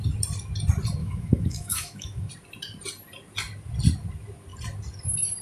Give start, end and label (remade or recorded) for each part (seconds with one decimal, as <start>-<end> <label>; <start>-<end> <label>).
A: 0.0-1.0 recorded; 1.0-2.3 remade; 2.3-5.4 recorded